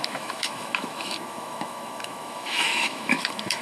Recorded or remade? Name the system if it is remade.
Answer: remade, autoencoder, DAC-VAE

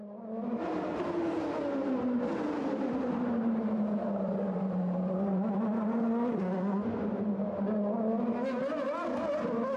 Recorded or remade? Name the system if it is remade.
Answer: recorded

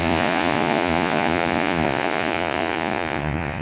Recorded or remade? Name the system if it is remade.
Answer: remade, vocoder, Vocos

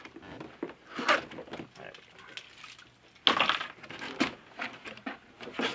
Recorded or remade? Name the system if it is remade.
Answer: recorded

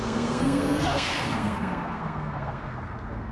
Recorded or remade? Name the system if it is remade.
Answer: remade, codec, SNAC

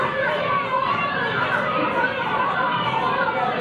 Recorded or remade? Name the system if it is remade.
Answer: remade, vocoder, BigVGAN v2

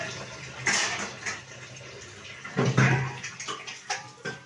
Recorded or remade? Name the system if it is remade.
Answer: recorded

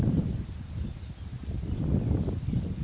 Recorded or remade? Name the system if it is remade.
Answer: recorded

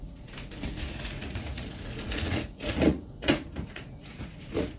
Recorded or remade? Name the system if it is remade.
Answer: remade, vocoder, Vocos